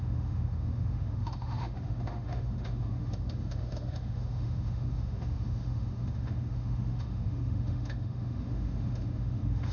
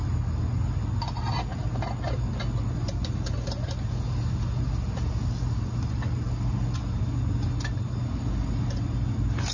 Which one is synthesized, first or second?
first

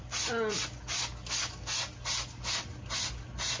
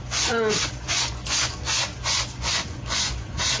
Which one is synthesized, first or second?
second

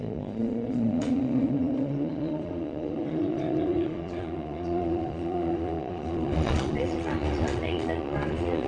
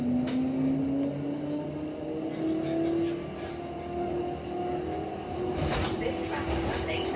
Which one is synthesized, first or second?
first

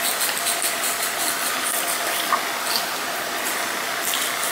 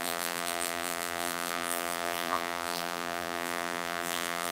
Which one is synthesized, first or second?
second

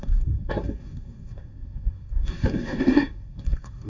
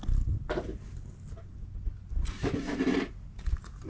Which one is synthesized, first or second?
first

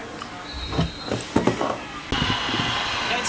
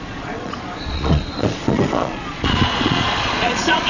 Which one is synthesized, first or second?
second